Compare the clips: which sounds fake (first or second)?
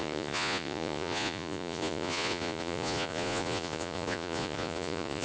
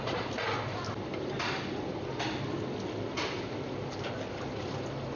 first